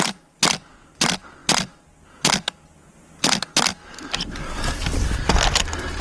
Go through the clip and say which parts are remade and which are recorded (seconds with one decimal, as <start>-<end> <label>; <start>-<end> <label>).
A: 0.0-6.0 recorded